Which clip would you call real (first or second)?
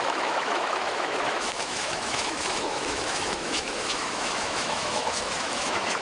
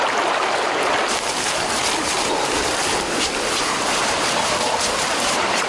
second